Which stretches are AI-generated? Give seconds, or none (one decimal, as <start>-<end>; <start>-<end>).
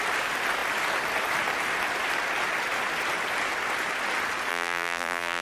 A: 4.5-5.4